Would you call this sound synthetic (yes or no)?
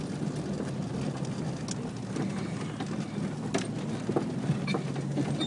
no